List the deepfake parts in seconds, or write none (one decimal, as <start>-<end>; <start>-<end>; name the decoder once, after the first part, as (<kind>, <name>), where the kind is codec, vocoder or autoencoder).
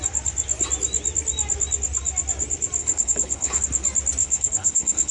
2.8-3.6 (codec, HILCodec); 4.2-5.1